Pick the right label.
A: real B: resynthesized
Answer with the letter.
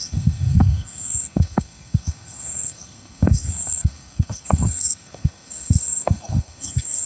B